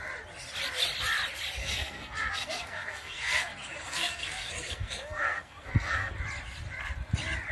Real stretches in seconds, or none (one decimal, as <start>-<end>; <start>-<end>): 0.0-1.6; 6.1-7.5